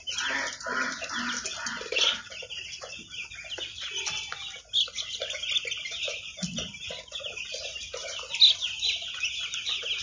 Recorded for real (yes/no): yes